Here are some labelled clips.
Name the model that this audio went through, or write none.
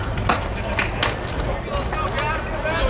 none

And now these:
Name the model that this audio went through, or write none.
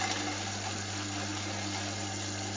none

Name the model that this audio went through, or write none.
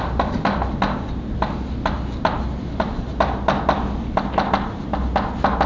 none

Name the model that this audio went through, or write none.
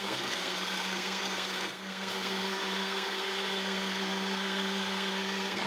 codec, SNAC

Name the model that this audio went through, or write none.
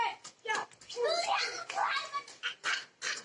none